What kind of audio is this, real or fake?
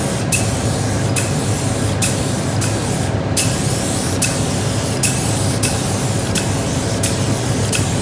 real